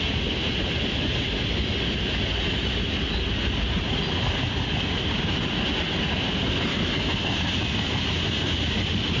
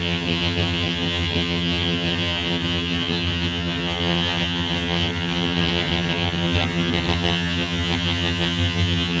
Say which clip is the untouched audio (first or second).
first